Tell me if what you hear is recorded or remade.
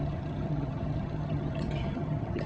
remade